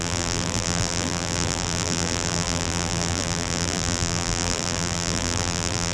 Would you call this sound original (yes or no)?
no